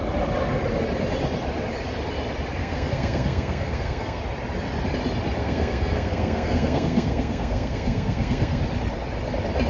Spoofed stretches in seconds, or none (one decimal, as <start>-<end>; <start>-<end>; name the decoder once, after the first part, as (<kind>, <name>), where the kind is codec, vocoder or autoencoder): 2.6-4.2 (codec, SNAC); 5.4-8.6